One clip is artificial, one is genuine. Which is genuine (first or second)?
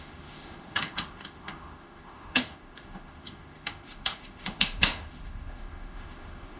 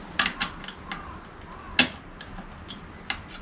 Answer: second